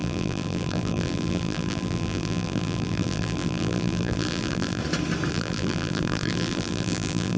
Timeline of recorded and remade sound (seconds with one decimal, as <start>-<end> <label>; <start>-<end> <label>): 0.0-4.8 remade; 4.8-5.3 recorded; 5.3-7.4 remade